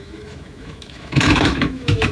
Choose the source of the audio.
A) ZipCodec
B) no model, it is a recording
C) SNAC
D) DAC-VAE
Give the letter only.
D